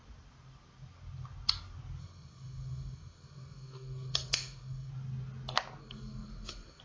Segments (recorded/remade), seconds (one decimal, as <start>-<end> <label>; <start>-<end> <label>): 0.0-2.0 recorded; 2.0-4.9 remade; 4.9-5.8 recorded; 5.8-6.8 remade

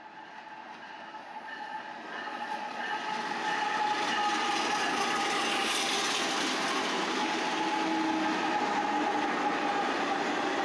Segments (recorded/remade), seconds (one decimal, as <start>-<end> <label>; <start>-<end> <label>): 0.0-1.2 recorded; 1.2-1.8 remade; 1.8-2.3 recorded; 2.3-3.0 remade; 3.0-10.6 recorded

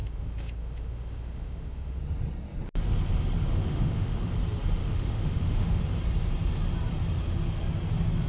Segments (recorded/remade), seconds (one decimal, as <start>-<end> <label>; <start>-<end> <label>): 0.0-2.0 remade; 2.0-3.5 recorded; 3.5-4.3 remade; 4.3-4.8 recorded; 4.8-5.8 remade; 5.8-8.3 recorded

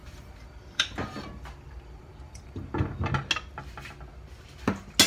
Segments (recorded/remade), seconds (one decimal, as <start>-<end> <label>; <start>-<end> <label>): 0.0-3.1 remade; 3.1-5.1 recorded

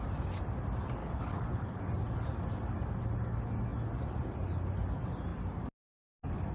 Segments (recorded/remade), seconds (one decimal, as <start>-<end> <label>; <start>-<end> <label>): 0.0-1.0 recorded; 1.0-1.8 remade; 1.8-6.5 recorded